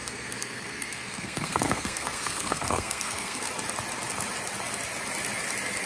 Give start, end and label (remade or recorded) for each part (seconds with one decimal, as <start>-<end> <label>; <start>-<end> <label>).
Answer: 0.0-3.5 remade; 3.5-5.9 recorded